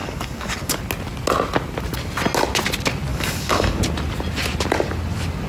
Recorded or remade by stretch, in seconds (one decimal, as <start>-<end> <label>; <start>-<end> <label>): 0.0-0.8 remade; 0.8-3.1 recorded; 3.1-3.8 remade; 3.8-5.5 recorded

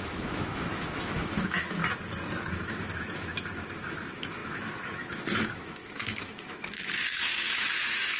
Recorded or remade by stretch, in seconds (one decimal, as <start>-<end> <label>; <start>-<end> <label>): 0.0-1.8 remade; 1.8-2.5 recorded; 2.5-8.2 remade

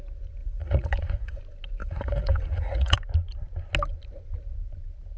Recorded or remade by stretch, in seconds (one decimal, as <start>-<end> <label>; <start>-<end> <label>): 0.0-0.4 recorded; 0.4-1.4 remade; 1.4-1.8 recorded; 1.8-3.0 remade; 3.0-5.2 recorded

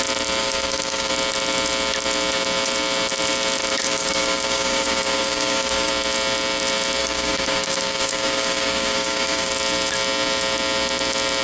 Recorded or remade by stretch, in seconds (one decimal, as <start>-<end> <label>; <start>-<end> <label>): 0.0-0.4 recorded; 0.4-1.1 remade; 1.1-3.7 recorded; 3.7-5.9 remade; 5.9-7.0 recorded; 7.0-9.5 remade; 9.5-11.4 recorded

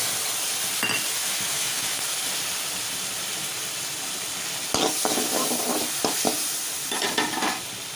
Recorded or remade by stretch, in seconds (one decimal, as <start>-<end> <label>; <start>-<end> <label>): 0.0-1.2 recorded; 1.2-2.0 remade; 2.0-8.0 recorded

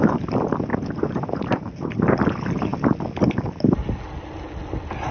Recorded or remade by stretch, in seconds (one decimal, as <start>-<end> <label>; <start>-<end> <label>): 0.0-0.7 recorded; 0.7-1.7 remade; 1.7-5.1 recorded

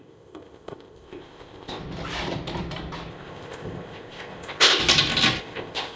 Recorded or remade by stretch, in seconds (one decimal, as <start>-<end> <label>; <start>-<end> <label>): 0.0-1.8 remade; 1.8-3.1 recorded; 3.1-4.8 remade; 4.8-5.4 recorded; 5.4-6.0 remade